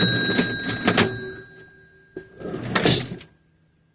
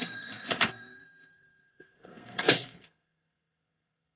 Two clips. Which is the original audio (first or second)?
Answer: first